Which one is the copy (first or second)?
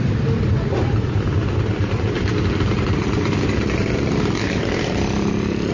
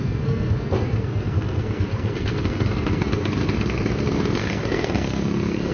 second